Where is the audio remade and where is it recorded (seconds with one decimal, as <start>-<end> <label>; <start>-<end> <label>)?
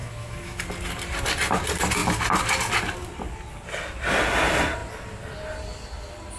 0.0-0.6 remade; 0.6-6.4 recorded